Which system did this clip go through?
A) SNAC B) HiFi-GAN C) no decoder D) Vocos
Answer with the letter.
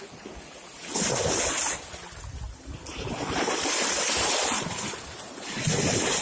C